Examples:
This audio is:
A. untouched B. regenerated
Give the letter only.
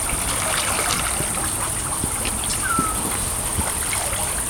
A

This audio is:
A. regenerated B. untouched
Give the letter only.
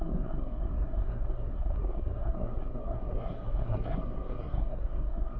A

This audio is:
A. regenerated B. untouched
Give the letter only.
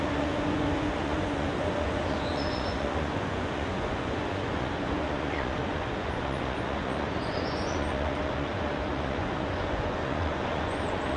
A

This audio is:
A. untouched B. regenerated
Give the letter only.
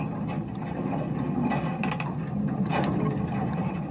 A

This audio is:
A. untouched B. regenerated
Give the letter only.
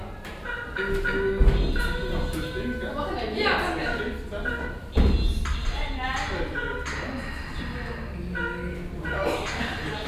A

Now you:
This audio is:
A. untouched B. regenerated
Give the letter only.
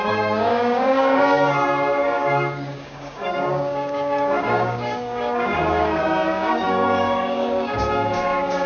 B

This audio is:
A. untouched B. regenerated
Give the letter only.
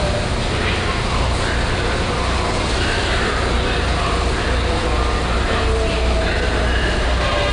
A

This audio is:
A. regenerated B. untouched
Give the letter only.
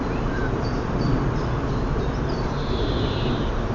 B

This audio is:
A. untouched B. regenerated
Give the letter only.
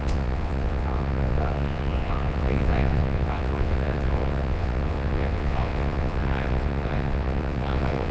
B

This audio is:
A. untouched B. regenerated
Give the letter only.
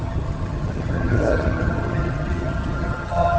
B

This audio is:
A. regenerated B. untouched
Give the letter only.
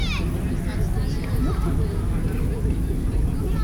B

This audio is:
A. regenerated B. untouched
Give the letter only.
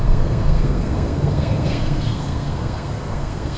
A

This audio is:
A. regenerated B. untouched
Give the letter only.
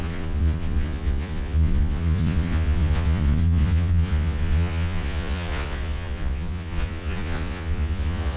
A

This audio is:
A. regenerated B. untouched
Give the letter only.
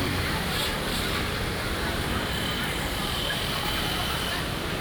A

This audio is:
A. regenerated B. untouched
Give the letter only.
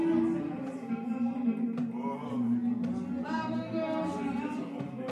A